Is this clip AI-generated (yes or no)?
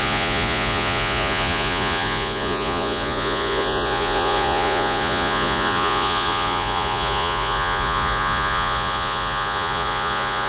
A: yes